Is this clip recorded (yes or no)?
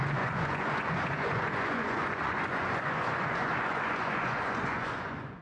no